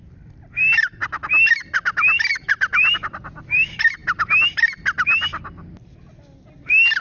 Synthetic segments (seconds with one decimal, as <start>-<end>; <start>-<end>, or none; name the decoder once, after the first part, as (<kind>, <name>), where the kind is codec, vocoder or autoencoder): 2.3-2.9 (vocoder, BigVGAN v2)